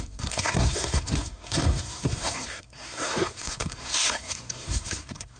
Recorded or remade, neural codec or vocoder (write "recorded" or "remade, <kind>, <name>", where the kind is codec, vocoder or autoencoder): remade, codec, SNAC